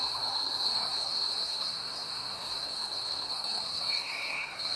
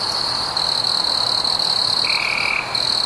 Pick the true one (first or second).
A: second